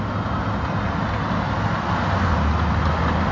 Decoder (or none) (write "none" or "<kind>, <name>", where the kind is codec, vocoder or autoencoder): none